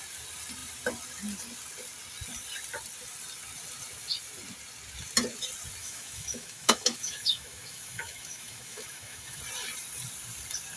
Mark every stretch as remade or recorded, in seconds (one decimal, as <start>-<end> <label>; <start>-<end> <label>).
0.0-5.8 recorded; 5.8-9.4 remade; 9.4-10.8 recorded